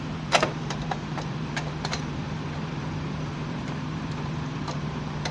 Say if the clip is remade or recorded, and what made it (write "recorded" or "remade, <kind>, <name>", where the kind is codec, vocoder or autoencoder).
remade, vocoder, BigVGAN v2